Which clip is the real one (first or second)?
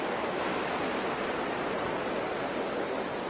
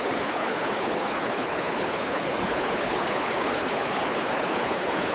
first